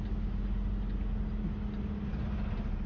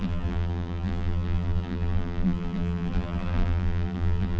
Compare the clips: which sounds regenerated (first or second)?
second